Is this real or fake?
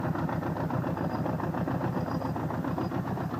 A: real